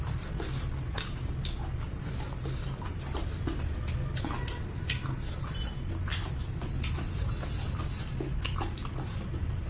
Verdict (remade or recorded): recorded